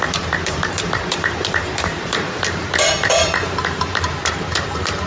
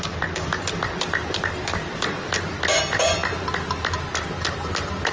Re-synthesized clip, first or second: first